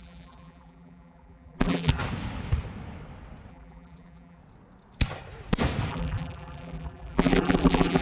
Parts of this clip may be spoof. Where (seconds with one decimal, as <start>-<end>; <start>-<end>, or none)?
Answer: 0.0-2.0; 3.5-4.4; 5.9-8.0

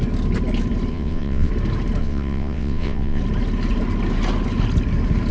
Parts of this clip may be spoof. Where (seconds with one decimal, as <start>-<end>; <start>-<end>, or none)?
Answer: 0.9-1.5; 2.0-3.2